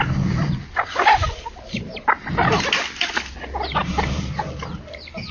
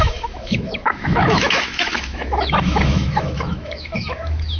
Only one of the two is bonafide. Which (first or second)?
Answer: first